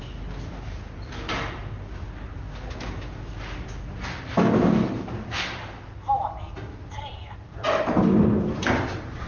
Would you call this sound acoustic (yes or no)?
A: yes